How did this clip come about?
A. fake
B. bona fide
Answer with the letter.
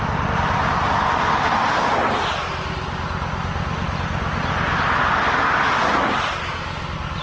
B